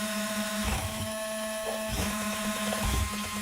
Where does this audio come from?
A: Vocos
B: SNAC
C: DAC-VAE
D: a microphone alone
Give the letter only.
C